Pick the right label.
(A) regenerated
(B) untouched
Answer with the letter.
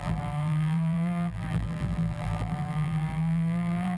A